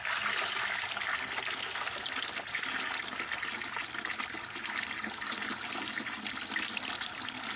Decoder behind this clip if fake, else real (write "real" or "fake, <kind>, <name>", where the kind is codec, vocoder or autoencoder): real